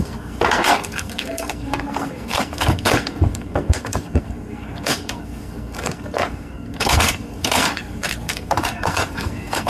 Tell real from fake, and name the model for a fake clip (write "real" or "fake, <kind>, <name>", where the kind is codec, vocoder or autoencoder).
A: fake, codec, SNAC